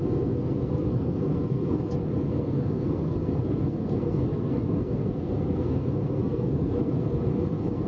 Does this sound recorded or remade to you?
remade